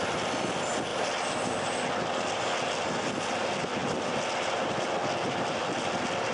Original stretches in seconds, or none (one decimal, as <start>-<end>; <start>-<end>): 0.0-6.3